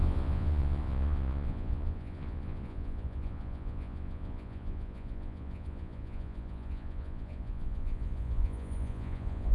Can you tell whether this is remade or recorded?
remade